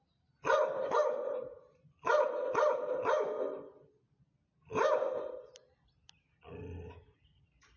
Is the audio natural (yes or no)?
yes